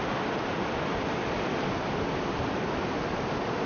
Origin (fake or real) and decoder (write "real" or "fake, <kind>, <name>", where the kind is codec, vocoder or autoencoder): real